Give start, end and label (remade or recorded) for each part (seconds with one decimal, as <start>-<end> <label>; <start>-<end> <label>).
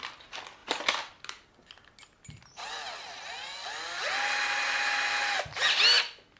0.0-6.4 recorded